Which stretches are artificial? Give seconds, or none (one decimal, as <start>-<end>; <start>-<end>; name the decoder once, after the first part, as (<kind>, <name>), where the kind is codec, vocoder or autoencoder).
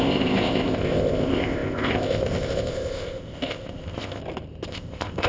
0.0-4.2 (codec, ZipCodec); 4.7-5.3